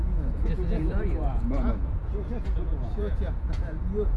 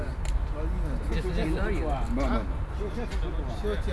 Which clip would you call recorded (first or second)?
second